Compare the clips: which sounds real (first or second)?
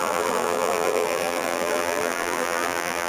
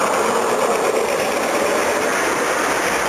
second